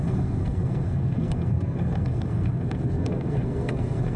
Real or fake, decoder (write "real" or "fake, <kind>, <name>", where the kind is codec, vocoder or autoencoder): fake, codec, SNAC